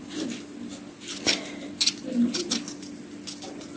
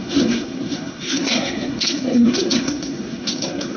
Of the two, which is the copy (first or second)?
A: second